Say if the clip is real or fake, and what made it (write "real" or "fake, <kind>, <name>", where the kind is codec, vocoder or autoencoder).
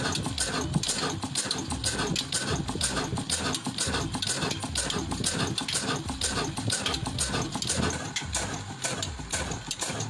real